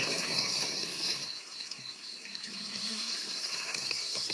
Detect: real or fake fake